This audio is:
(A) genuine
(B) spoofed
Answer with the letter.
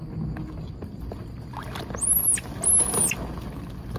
A